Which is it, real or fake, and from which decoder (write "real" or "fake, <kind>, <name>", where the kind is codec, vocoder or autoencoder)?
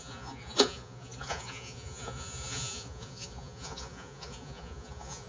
fake, vocoder, Vocos